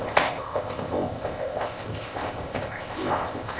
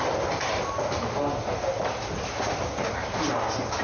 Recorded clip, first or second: second